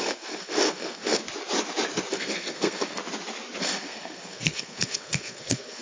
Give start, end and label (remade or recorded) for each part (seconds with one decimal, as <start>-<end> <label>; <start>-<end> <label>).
0.0-1.2 remade; 1.2-2.1 recorded; 2.1-3.0 remade; 3.0-3.6 recorded; 3.6-5.8 remade